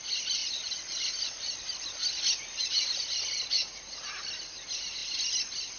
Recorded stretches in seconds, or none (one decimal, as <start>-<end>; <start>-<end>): 0.0-5.8